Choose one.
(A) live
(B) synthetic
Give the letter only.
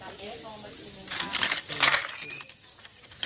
A